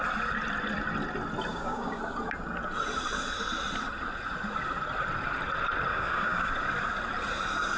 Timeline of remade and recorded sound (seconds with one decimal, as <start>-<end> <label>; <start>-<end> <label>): 0.0-1.5 recorded; 1.5-2.0 remade; 2.0-5.9 recorded; 5.9-6.5 remade; 6.5-7.8 recorded